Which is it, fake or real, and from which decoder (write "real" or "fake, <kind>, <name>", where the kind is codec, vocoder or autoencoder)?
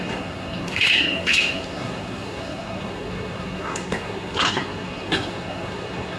fake, codec, SNAC